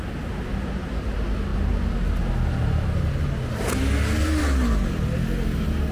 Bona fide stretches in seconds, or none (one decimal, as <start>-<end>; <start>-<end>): 0.0-5.9